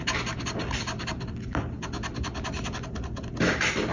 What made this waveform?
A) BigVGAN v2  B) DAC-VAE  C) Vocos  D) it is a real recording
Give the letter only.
D